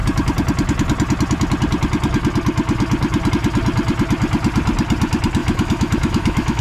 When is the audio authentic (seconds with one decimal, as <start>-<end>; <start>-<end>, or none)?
0.0-5.4